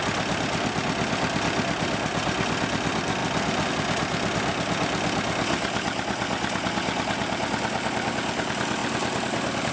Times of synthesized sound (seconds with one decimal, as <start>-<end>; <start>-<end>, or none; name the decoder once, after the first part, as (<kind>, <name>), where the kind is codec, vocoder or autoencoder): none